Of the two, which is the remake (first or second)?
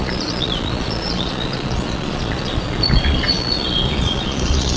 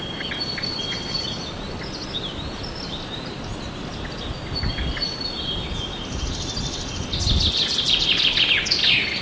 first